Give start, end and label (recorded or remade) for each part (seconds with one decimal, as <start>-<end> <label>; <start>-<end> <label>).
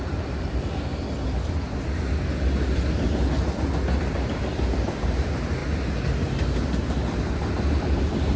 0.0-0.9 remade; 0.9-4.0 recorded; 4.0-5.6 remade; 5.6-7.7 recorded; 7.7-8.4 remade